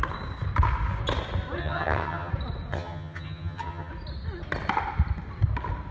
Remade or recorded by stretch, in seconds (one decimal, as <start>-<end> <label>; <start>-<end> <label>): 0.0-1.6 recorded; 1.6-2.3 remade; 2.3-2.7 recorded; 2.7-3.9 remade; 3.9-5.9 recorded